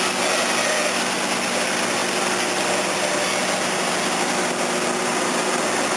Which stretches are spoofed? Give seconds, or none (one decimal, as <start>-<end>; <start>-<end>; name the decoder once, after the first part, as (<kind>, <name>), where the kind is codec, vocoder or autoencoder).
none